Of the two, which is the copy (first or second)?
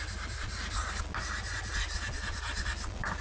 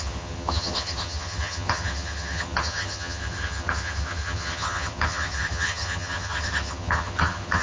second